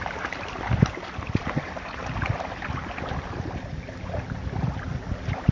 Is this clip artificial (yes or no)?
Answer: no